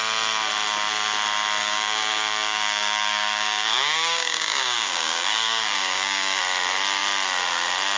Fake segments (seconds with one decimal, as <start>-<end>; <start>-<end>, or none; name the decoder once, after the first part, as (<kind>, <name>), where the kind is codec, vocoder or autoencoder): 1.6-6.4 (codec, DAC)

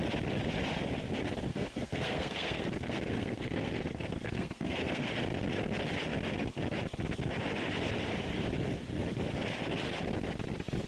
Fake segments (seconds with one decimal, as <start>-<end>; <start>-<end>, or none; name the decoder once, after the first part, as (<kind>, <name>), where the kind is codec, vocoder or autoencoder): 1.5-5.1 (codec, SNAC)

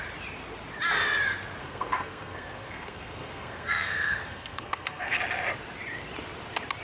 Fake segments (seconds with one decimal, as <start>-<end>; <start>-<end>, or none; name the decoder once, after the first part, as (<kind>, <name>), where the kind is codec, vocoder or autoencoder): 1.6-5.2 (codec, SNAC)

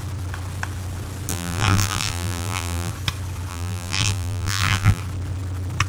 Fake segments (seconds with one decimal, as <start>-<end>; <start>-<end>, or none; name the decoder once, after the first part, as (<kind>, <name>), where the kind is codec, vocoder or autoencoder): 1.3-2.9 (vocoder, BigVGAN v2); 3.5-5.0

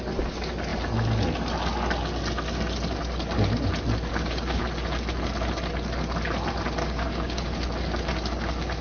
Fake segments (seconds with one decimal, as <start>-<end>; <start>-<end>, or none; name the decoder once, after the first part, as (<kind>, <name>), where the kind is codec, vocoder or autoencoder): 4.1-4.6 (codec, DAC); 6.8-7.4

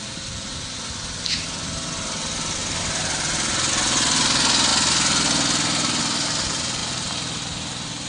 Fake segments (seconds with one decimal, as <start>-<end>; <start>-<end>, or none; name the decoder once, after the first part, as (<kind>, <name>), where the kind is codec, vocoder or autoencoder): none